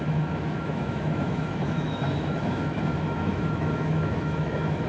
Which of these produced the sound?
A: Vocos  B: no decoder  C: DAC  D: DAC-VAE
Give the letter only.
D